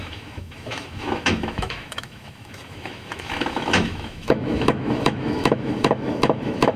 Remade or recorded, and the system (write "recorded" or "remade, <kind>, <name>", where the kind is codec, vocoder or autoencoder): remade, autoencoder, DAC-VAE